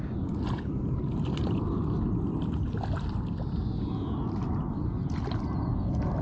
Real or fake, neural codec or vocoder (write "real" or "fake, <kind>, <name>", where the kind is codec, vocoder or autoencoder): real